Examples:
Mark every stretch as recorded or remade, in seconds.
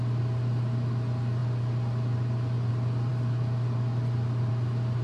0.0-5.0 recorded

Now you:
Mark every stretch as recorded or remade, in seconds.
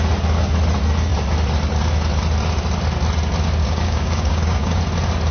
0.0-3.6 recorded; 3.6-4.8 remade; 4.8-5.3 recorded